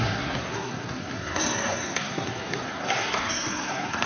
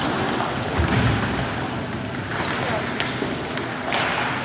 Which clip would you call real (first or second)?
second